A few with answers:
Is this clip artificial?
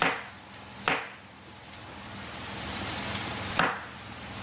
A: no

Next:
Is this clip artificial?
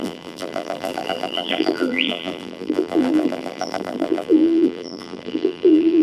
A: yes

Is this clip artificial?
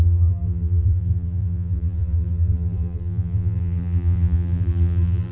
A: yes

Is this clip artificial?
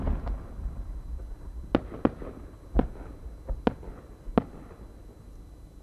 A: no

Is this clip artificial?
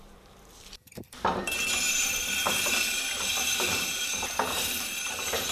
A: yes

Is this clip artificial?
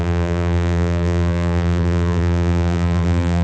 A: yes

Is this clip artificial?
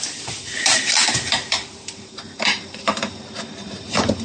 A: yes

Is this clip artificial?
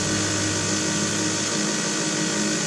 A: no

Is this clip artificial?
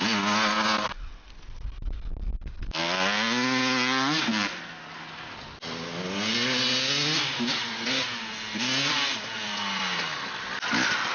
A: no